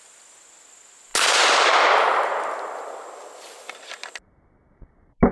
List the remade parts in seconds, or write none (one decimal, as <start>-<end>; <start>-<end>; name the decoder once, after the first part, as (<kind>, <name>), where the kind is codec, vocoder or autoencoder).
none